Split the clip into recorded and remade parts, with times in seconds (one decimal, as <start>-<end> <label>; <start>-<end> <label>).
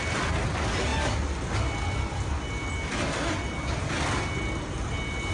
0.0-5.3 recorded